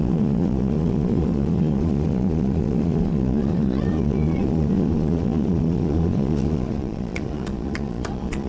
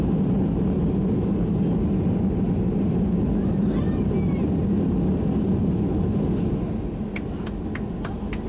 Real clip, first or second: second